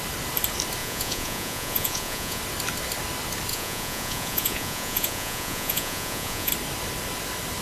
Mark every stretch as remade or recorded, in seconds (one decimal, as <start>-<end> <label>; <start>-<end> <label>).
0.0-0.8 recorded; 0.8-2.4 remade; 2.4-3.5 recorded; 3.5-6.5 remade; 6.5-7.6 recorded